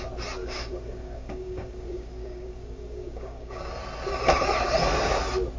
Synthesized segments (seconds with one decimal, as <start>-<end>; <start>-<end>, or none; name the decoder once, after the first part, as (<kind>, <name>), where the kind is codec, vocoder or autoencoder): 0.4-3.8 (codec, DAC)